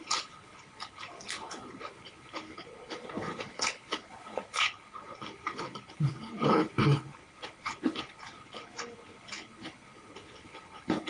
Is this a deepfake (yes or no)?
yes